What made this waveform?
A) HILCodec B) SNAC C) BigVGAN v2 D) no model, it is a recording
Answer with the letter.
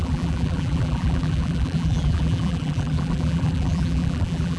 C